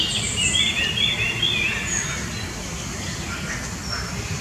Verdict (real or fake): real